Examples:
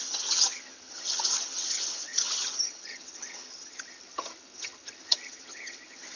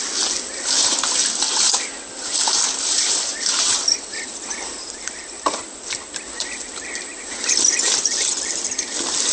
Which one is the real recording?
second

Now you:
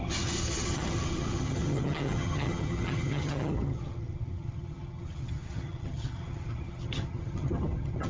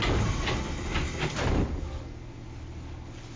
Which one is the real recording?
second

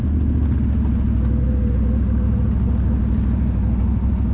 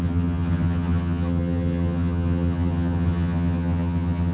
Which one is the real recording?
first